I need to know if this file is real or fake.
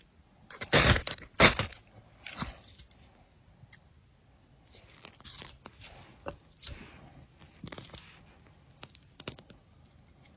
real